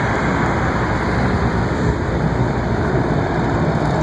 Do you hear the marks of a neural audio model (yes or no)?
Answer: yes